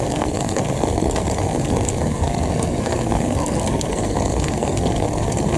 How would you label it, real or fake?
fake